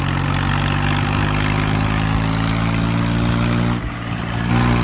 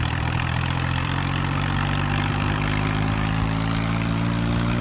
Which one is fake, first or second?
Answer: second